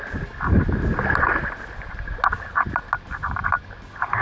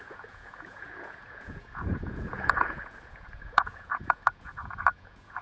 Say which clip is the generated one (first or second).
second